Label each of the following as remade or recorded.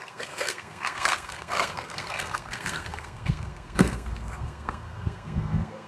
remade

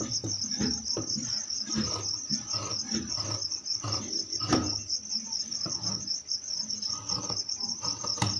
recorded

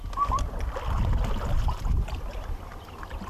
recorded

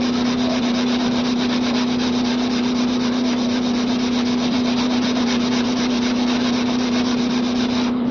recorded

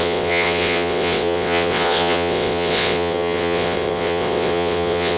remade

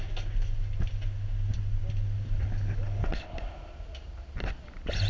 recorded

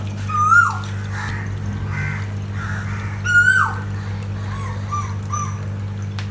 recorded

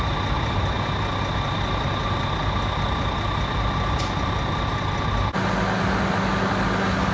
recorded